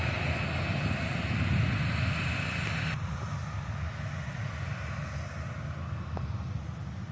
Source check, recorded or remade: recorded